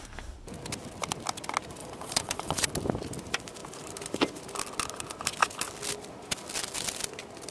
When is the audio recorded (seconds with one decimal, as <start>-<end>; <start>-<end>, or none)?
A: 0.0-1.8; 2.7-7.5